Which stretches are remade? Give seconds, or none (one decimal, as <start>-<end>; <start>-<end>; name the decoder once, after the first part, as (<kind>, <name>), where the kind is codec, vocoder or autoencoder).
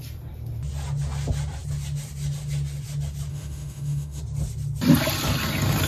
3.3-4.2 (autoencoder, DAC-VAE)